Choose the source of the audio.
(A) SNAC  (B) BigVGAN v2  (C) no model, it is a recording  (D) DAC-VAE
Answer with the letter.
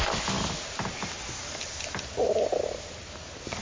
C